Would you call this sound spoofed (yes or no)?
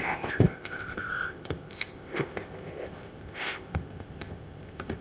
yes